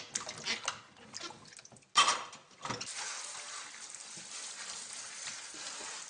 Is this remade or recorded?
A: recorded